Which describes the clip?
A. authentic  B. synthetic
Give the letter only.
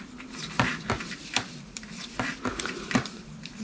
B